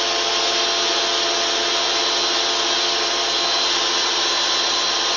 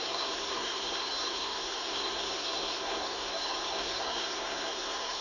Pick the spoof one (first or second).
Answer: second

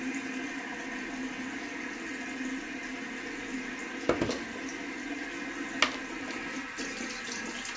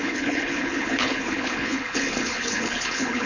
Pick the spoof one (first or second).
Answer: second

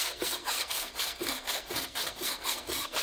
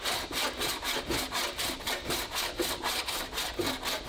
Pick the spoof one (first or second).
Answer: first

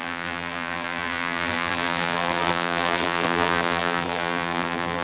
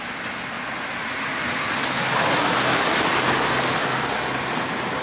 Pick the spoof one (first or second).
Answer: first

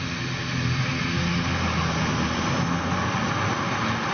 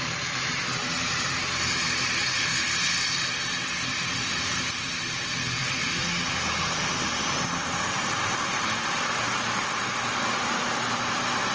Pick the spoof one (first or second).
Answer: second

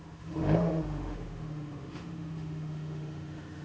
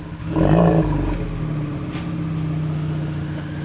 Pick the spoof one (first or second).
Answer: first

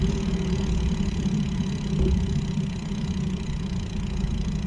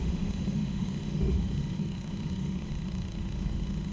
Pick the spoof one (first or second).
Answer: second